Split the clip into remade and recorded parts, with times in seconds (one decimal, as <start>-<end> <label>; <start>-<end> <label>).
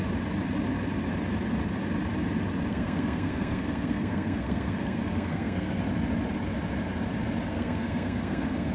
0.0-2.7 recorded; 2.7-5.8 remade; 5.8-7.5 recorded; 7.5-8.7 remade